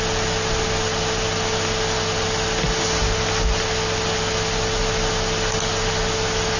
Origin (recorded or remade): recorded